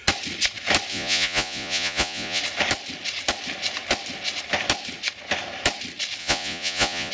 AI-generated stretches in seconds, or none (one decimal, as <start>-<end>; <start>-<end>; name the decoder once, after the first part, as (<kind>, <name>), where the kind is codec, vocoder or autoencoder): 0.9-2.4 (vocoder, Vocos); 6.2-7.1